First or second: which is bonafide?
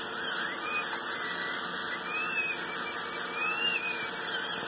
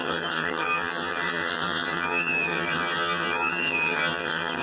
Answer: first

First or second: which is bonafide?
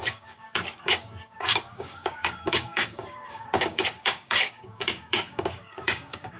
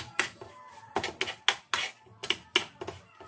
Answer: second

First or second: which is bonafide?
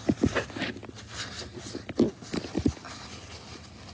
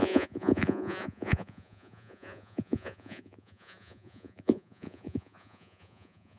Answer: first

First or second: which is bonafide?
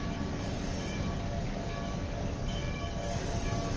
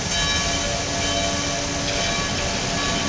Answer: second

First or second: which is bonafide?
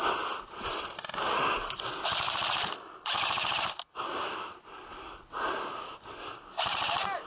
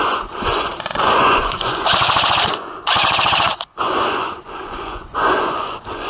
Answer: first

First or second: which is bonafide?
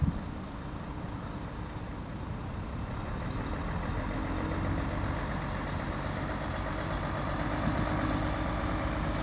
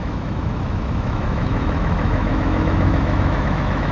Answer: first